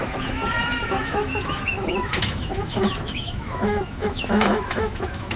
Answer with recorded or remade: remade